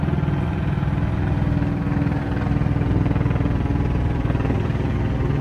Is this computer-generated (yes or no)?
no